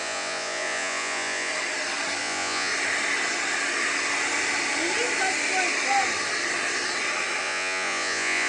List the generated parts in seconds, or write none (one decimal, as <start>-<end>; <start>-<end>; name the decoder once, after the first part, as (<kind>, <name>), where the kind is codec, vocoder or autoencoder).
0.0-1.5 (vocoder, Vocos); 2.2-2.7; 7.4-8.5